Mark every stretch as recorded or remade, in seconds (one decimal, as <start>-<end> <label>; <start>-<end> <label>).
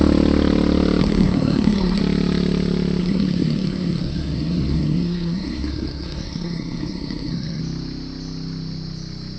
0.0-1.0 recorded; 1.0-2.0 remade; 2.0-3.0 recorded; 3.0-7.6 remade; 7.6-9.4 recorded